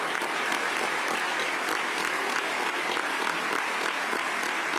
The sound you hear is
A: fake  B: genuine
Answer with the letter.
A